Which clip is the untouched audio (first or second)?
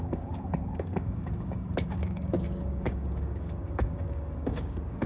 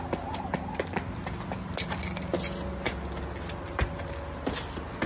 second